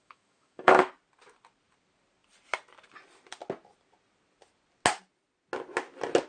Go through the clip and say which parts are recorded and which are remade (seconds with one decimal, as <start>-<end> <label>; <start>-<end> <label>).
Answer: 0.0-0.9 remade; 0.9-6.3 recorded